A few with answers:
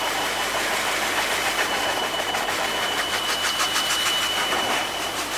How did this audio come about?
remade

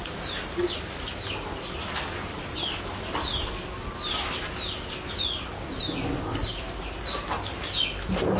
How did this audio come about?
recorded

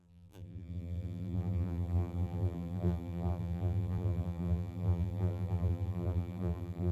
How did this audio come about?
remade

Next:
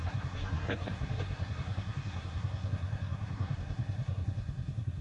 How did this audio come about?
remade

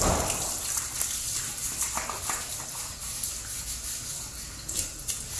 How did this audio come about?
recorded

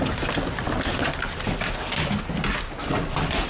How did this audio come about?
recorded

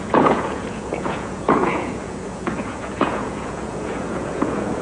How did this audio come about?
remade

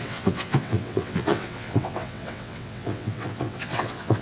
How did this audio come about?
remade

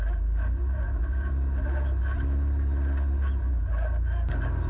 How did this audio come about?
recorded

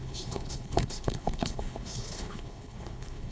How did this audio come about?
remade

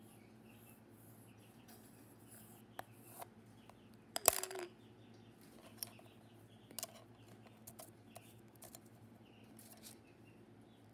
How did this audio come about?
recorded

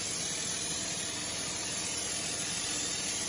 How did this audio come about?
remade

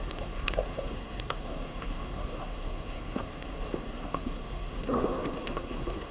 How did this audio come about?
remade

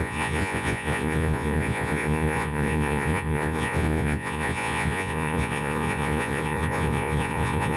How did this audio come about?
remade